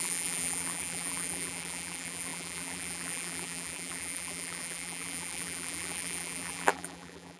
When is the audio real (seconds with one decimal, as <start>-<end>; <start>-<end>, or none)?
none